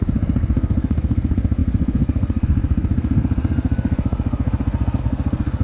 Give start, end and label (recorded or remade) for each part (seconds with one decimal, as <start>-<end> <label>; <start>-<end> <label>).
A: 0.0-5.6 remade